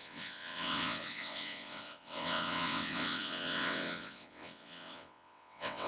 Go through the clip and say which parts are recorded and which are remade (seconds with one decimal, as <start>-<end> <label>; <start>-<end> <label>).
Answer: 0.0-5.9 remade